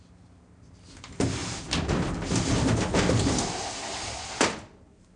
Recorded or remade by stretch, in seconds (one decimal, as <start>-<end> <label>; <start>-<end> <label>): 0.0-5.2 recorded